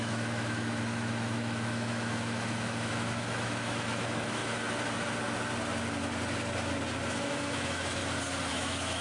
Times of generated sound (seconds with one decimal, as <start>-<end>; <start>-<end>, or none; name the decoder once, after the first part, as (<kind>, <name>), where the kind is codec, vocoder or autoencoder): 0.0-4.4 (autoencoder, DAC-VAE); 7.1-8.0; 8.5-9.0